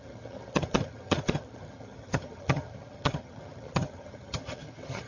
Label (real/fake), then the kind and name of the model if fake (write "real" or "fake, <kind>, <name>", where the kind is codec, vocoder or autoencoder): fake, vocoder, HiFi-GAN